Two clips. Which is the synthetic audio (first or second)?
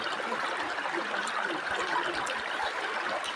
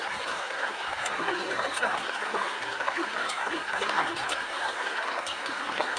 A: second